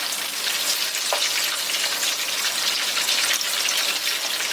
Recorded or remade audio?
recorded